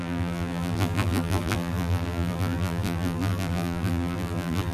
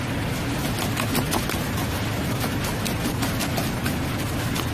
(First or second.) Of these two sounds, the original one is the second